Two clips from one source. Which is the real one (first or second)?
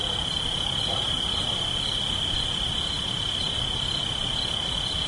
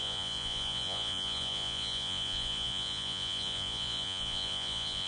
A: first